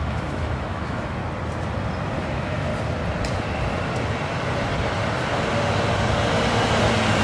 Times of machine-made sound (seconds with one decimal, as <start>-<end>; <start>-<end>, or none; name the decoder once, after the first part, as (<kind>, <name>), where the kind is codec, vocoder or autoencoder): 0.0-1.2 (autoencoder, DAC-VAE); 2.3-2.7